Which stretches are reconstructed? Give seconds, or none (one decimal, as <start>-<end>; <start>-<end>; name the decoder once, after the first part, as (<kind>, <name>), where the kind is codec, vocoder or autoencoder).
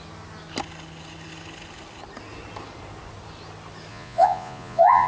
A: 3.9-5.1 (vocoder, Vocos)